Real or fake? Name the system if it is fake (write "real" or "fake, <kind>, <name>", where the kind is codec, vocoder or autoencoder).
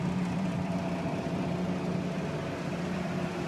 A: fake, vocoder, BigVGAN v2